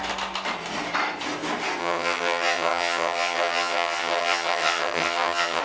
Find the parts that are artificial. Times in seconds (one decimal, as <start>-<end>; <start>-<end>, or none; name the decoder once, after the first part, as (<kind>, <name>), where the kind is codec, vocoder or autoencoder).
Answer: 1.8-5.6 (vocoder, HiFi-GAN)